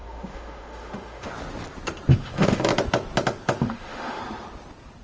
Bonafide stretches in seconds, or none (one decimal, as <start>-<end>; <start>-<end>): 1.3-2.1; 2.7-3.6; 4.2-5.0